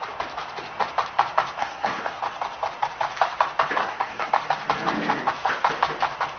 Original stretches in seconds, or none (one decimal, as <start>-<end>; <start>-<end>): 0.0-1.6; 2.2-3.8; 4.3-6.4